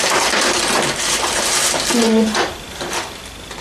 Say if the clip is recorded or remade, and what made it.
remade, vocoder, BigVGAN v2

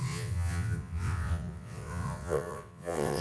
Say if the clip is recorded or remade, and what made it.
remade, vocoder, WaveNeXt